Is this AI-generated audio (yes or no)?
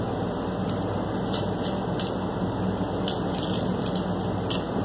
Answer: no